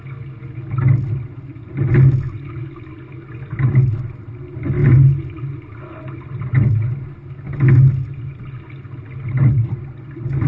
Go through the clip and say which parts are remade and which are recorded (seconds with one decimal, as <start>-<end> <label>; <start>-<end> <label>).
0.0-10.5 recorded